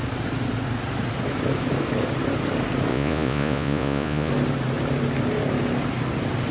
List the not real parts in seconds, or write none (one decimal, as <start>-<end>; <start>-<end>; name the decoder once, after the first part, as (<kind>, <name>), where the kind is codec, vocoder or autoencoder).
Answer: 2.9-4.3 (vocoder, Vocos)